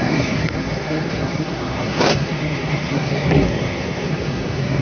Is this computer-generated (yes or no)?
yes